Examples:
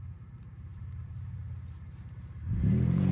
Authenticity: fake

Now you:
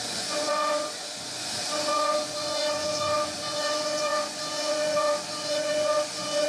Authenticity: fake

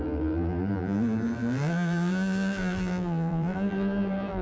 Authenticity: fake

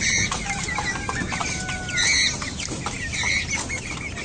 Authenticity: real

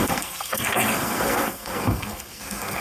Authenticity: fake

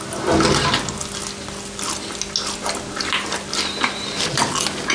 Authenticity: real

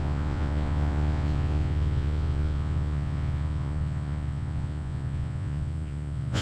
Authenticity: fake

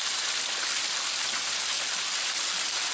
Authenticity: real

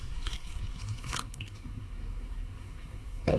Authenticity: fake